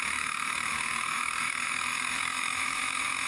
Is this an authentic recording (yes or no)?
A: no